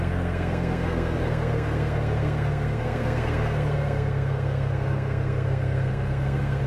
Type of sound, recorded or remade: remade